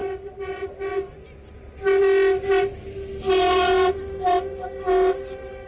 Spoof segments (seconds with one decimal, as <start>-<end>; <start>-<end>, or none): none